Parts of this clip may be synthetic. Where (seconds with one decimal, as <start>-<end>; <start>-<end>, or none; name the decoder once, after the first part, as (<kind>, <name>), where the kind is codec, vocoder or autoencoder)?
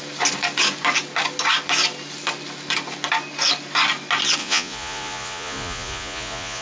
4.4-6.6 (vocoder, Vocos)